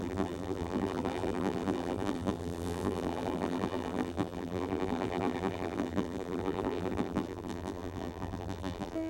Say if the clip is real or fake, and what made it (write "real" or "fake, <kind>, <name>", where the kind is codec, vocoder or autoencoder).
fake, vocoder, BigVGAN v2